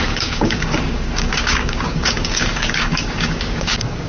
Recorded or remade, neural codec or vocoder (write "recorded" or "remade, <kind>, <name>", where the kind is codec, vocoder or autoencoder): remade, codec, DAC